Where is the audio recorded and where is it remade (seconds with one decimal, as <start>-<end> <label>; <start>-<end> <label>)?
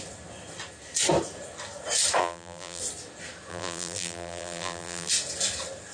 0.0-2.2 recorded; 2.2-2.8 remade; 2.8-3.5 recorded; 3.5-5.1 remade; 5.1-5.9 recorded